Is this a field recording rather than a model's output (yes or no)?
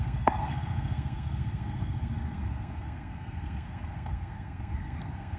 no